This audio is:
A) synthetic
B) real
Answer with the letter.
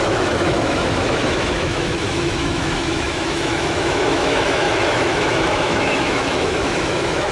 A